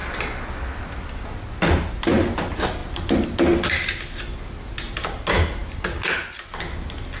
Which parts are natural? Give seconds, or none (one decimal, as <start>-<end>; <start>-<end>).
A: 0.0-7.2